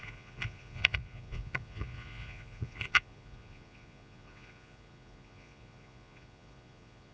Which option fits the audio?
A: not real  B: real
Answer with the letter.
A